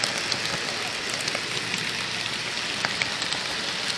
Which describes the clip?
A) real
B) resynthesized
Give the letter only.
A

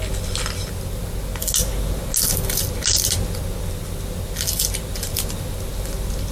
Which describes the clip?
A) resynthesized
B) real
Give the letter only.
B